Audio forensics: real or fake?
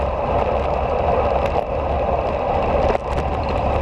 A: real